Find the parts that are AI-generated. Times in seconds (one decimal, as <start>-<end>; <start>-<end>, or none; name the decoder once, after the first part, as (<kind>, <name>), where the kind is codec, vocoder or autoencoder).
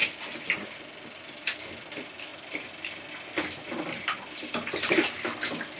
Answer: none